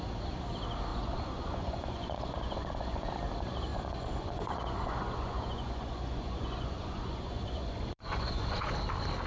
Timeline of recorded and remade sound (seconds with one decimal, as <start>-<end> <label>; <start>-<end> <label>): 0.0-0.9 recorded; 0.9-3.1 remade; 3.1-3.7 recorded; 3.7-8.7 remade; 8.7-9.3 recorded